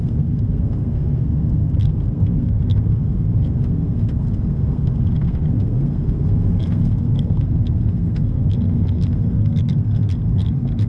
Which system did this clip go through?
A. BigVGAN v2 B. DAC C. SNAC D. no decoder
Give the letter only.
C